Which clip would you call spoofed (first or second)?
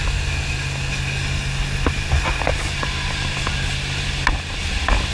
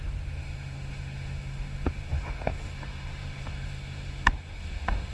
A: second